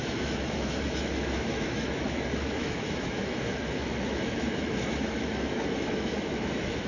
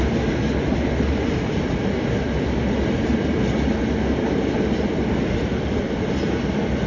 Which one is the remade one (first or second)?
first